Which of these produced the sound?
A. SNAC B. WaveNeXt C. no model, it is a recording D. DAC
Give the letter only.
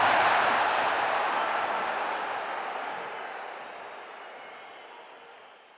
C